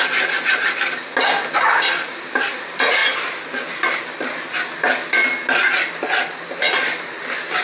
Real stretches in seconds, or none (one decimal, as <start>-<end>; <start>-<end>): 0.0-7.6